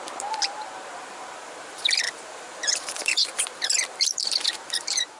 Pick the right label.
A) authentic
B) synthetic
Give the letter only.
B